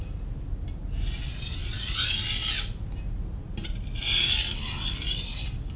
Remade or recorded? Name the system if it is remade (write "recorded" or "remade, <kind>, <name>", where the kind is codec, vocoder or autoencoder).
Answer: recorded